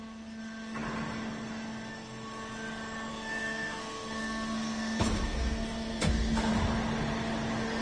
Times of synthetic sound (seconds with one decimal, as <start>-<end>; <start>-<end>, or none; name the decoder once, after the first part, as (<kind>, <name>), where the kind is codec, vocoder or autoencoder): 3.1-6.5 (codec, SNAC)